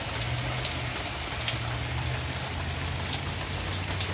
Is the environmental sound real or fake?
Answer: real